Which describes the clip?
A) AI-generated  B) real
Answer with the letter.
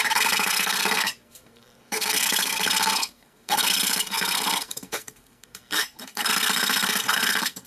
A